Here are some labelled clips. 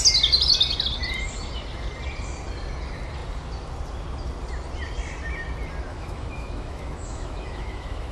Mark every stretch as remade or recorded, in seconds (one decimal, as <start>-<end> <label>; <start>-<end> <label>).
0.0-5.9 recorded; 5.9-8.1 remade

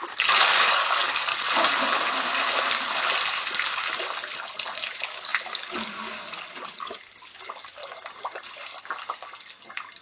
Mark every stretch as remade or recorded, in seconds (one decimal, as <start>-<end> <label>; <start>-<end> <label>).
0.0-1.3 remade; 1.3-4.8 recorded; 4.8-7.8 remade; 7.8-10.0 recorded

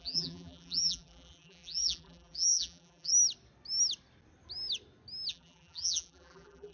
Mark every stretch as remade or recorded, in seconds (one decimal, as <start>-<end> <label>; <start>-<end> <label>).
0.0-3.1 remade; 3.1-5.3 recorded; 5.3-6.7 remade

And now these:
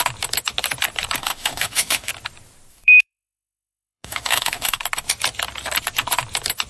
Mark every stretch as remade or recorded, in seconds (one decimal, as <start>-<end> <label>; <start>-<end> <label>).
0.0-1.2 recorded; 1.2-2.1 remade; 2.1-2.7 recorded; 2.7-4.8 remade; 4.8-6.7 recorded

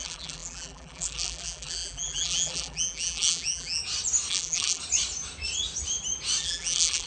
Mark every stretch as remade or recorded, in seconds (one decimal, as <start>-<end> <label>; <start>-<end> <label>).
0.0-3.8 remade; 3.8-4.3 recorded; 4.3-4.8 remade; 4.8-6.4 recorded; 6.4-7.1 remade